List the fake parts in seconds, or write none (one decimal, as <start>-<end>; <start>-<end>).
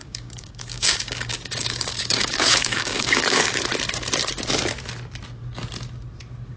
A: 0.0-3.6